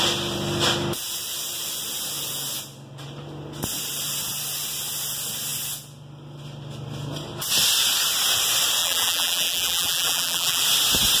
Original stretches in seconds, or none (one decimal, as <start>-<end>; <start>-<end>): 0.0-8.8; 10.6-11.2